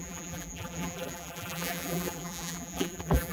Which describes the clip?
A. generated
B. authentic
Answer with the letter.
A